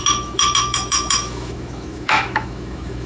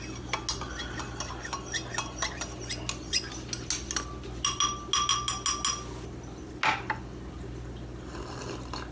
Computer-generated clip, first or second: first